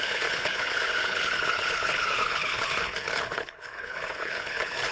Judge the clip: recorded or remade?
remade